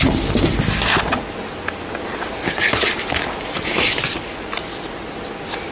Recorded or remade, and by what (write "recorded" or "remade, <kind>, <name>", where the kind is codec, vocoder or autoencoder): recorded